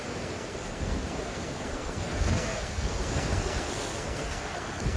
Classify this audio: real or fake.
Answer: fake